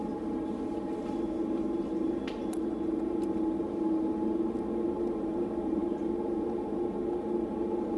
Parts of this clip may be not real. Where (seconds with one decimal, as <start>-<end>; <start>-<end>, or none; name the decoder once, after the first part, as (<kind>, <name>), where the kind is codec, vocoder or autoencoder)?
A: none